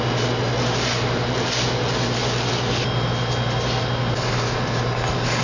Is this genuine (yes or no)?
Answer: yes